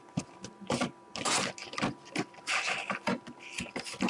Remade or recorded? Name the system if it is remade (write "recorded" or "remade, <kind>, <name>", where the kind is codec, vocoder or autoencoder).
recorded